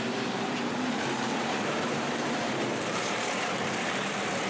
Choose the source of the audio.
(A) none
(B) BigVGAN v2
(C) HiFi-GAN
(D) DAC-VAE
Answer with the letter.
B